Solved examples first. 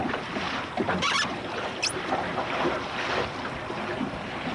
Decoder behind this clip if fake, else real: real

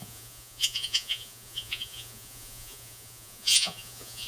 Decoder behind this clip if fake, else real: fake, vocoder, Vocos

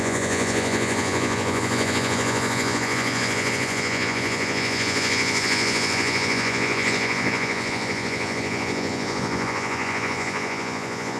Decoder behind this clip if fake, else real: fake, vocoder, Vocos